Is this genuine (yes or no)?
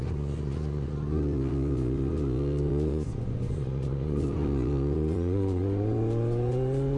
no